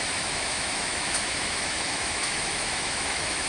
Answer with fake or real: fake